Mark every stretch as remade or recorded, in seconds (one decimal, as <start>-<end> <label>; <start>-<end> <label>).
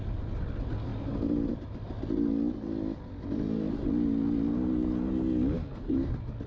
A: 0.0-6.5 recorded